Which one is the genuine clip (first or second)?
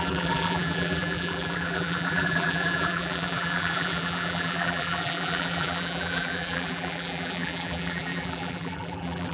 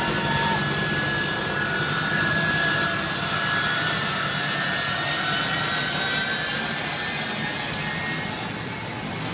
second